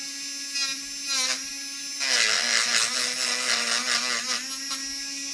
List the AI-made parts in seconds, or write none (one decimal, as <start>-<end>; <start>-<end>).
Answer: none

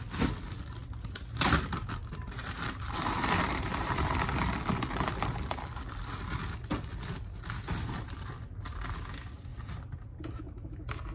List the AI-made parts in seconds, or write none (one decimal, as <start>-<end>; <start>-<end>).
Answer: 0.8-4.1; 9.5-10.7

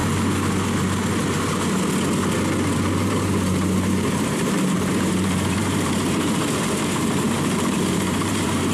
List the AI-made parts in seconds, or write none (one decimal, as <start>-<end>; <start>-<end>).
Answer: 2.6-8.7

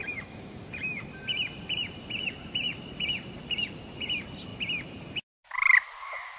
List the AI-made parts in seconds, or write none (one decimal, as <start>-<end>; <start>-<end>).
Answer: 0.0-3.4

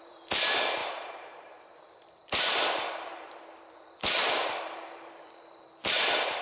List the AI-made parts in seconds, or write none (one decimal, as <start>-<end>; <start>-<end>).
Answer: 0.0-6.4